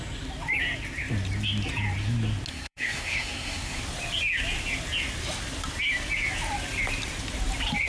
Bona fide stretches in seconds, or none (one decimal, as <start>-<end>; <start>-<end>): 0.0-2.5; 3.8-7.9